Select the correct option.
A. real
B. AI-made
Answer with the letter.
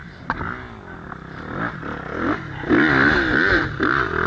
A